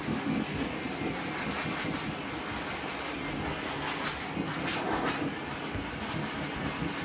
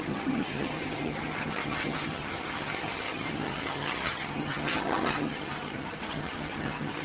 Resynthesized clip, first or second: second